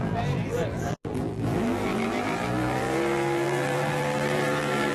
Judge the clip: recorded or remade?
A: remade